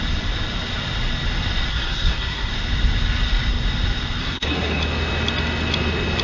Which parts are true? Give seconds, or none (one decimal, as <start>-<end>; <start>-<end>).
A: 0.0-1.7; 2.5-4.2; 4.8-6.2